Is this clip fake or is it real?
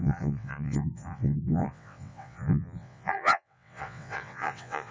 fake